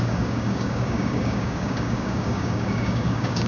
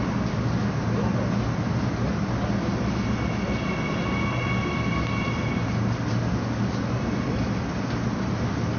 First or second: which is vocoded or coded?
first